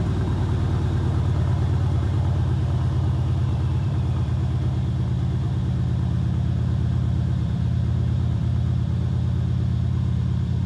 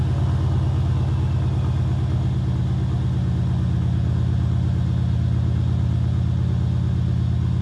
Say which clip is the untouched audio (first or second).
second